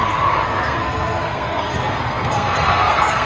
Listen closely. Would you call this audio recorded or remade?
remade